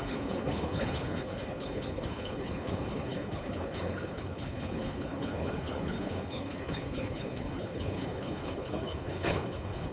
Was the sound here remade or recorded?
remade